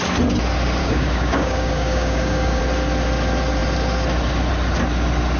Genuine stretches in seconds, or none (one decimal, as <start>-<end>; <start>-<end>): 0.0-0.8; 2.6-5.4